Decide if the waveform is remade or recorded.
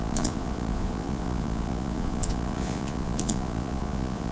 remade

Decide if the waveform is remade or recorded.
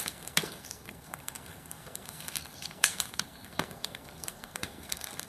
remade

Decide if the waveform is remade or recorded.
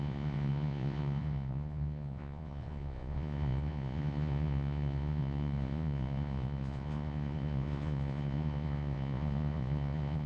remade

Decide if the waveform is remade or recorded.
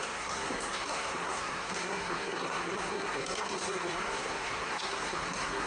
remade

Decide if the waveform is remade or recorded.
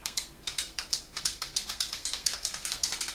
remade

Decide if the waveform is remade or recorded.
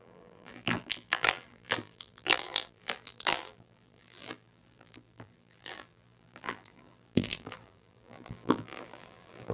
remade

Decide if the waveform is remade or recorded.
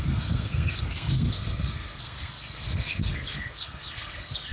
remade